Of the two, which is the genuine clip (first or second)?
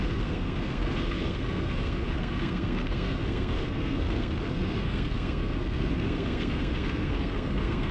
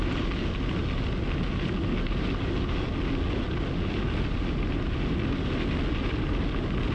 second